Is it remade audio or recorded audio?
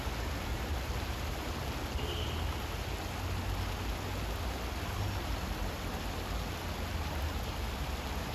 recorded